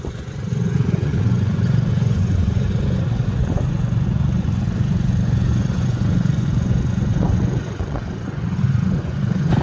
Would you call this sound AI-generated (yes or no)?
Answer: yes